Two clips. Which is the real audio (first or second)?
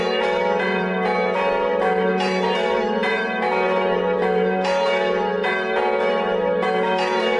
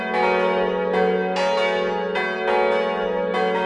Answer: second